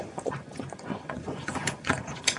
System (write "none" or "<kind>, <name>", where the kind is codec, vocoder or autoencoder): vocoder, Vocos